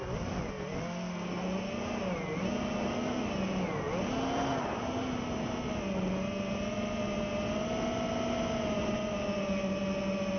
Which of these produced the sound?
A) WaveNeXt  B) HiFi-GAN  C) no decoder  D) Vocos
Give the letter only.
C